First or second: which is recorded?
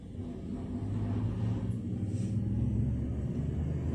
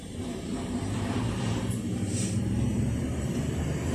first